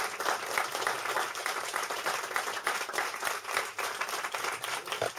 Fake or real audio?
real